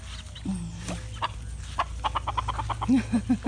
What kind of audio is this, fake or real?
real